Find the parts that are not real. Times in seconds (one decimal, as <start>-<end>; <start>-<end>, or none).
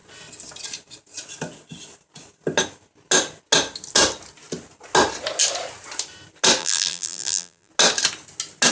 6.6-7.7